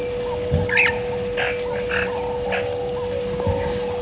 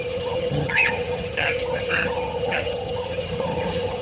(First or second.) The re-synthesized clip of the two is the second